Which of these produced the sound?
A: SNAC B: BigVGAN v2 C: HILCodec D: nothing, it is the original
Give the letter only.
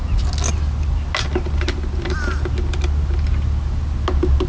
D